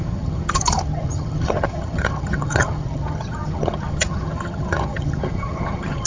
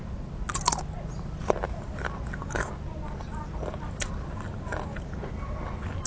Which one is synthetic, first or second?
first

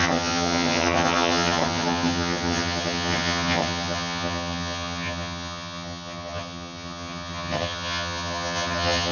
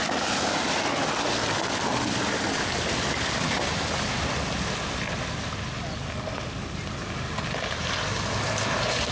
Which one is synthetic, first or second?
first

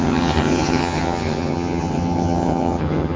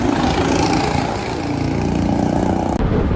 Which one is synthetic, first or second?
first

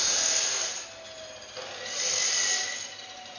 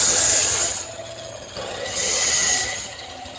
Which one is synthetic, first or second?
second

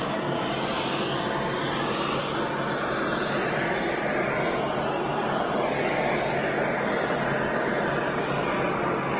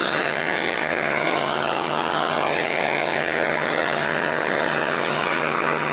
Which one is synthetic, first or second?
second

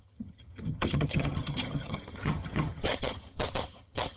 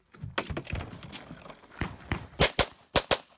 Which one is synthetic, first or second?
first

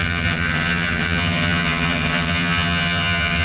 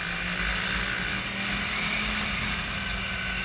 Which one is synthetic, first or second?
first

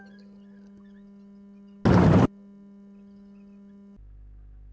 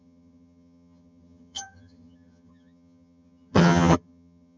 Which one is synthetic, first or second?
second